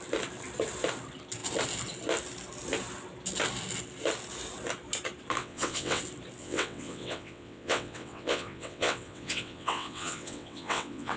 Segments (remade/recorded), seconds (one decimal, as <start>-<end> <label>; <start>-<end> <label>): 0.0-5.4 recorded; 5.4-6.0 remade; 6.0-6.4 recorded; 6.4-11.2 remade